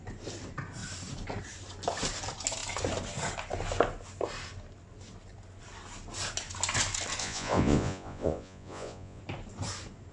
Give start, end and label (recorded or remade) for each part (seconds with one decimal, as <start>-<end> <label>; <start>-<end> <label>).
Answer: 0.0-7.2 recorded; 7.2-9.2 remade; 9.2-10.1 recorded